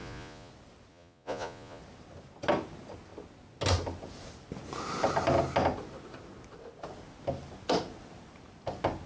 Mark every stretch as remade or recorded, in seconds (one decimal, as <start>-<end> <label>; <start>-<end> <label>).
0.0-0.5 remade; 0.5-0.9 recorded; 0.9-1.8 remade; 1.8-9.1 recorded

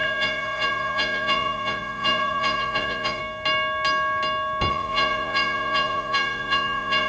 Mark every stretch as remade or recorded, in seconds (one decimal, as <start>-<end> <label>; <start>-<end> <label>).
0.0-3.2 remade; 3.2-4.7 recorded; 4.7-7.1 remade

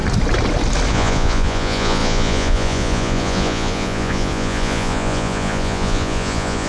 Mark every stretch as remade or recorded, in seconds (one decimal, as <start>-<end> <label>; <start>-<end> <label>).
0.0-0.9 recorded; 0.9-6.7 remade

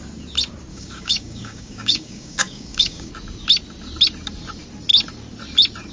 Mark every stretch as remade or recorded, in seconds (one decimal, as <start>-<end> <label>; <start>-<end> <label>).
0.0-0.7 recorded; 0.7-3.1 remade; 3.1-5.9 recorded

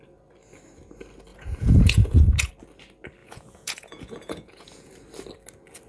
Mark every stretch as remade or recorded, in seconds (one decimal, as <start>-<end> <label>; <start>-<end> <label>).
0.0-1.3 recorded; 1.3-2.5 remade; 2.5-3.2 recorded; 3.2-4.9 remade; 4.9-5.9 recorded

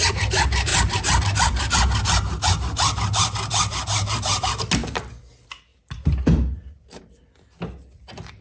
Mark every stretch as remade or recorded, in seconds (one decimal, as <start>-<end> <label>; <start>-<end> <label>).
0.0-5.7 recorded; 5.7-7.0 remade; 7.0-8.4 recorded

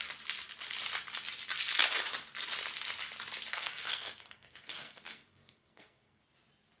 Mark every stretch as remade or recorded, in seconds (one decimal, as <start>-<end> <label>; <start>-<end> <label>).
0.0-3.5 recorded; 3.5-6.2 remade; 6.2-6.8 recorded